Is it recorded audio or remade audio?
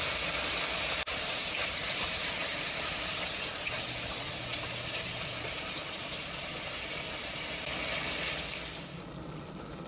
recorded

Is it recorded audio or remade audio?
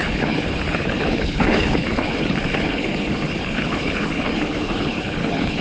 remade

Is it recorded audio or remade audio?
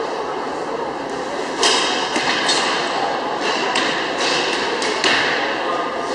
recorded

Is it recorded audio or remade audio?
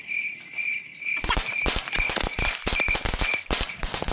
recorded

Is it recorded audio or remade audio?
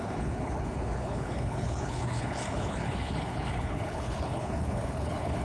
remade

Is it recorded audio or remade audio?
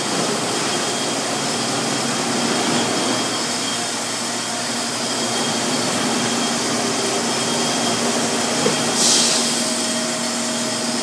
recorded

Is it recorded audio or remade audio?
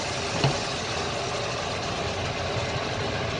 recorded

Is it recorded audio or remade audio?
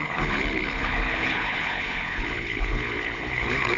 remade